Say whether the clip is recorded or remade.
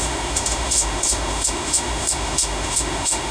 remade